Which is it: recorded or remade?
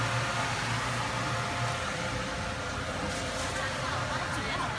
recorded